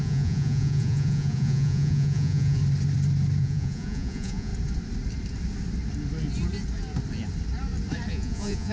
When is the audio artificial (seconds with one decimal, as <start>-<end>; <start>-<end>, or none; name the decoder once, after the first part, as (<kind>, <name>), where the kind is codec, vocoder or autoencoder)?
0.0-2.6 (vocoder, Vocos); 3.4-4.5; 8.1-8.7